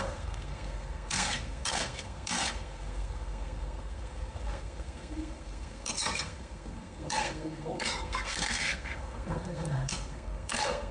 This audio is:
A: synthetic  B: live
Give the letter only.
A